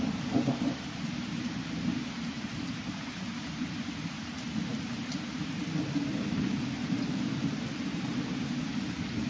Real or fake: fake